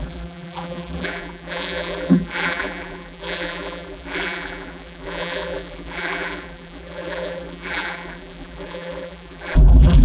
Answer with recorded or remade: remade